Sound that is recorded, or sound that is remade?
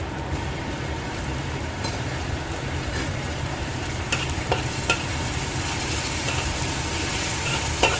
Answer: remade